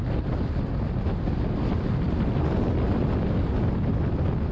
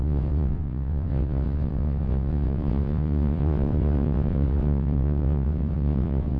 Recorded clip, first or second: first